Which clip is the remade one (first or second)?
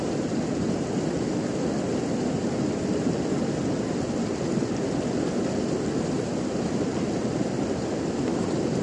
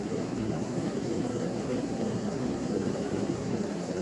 second